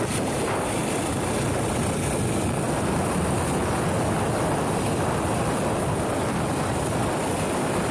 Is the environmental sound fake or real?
real